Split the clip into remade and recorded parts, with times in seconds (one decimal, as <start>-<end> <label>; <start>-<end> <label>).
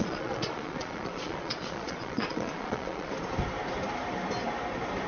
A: 0.0-3.1 remade; 3.1-5.1 recorded